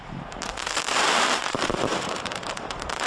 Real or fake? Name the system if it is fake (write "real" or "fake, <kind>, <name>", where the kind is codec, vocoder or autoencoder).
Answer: fake, vocoder, BigVGAN v2